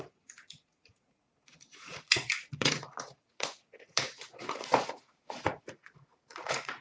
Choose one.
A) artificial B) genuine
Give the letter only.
A